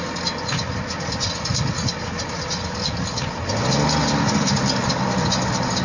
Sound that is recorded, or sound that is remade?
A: recorded